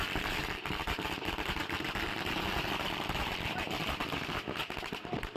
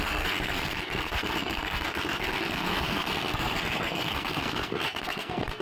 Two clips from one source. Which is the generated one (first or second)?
second